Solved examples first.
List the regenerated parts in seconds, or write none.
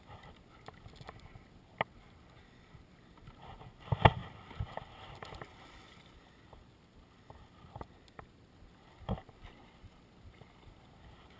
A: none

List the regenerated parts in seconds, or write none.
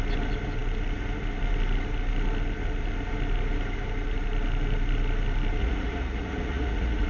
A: 5.6-7.1 (vocoder, Vocos)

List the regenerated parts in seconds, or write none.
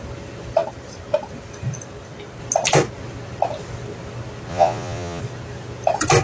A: 4.5-5.2 (vocoder, Vocos)